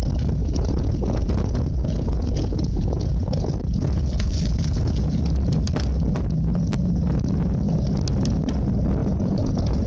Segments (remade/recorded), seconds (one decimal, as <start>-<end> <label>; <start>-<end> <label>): 0.0-0.4 recorded; 0.4-5.2 remade; 5.2-9.0 recorded; 9.0-9.9 remade